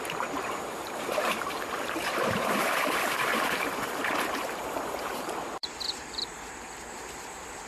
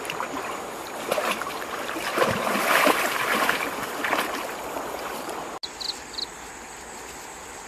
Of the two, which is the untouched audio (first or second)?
second